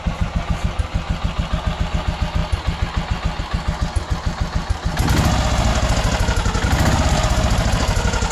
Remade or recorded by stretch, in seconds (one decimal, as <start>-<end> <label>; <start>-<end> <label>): 0.0-8.3 recorded